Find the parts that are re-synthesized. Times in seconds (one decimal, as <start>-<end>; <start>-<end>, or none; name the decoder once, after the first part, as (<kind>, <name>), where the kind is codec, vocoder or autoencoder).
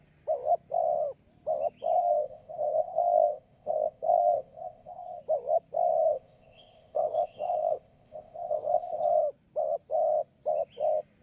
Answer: 2.0-5.2 (codec, ZipCodec); 6.1-9.2